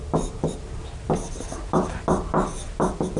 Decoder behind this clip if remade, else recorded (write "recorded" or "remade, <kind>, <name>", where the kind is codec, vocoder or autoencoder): recorded